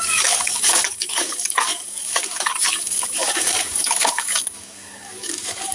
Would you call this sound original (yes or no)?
no